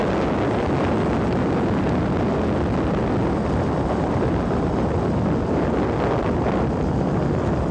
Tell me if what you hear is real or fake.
real